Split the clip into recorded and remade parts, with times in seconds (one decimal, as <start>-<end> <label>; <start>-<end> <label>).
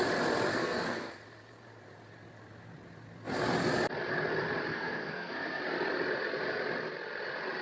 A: 0.0-0.5 recorded; 0.5-1.1 remade; 1.1-4.7 recorded; 4.7-5.6 remade; 5.6-7.6 recorded